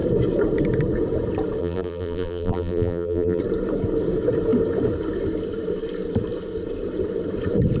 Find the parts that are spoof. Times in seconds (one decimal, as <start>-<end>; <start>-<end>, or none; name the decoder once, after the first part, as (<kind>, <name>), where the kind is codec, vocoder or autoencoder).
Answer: 1.6-3.4 (vocoder, BigVGAN v2)